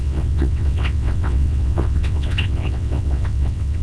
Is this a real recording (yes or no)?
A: no